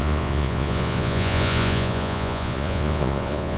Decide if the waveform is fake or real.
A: fake